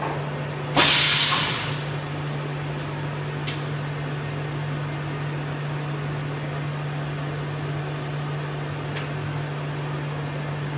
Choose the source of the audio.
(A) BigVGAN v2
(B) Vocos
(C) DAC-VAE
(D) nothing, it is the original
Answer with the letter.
D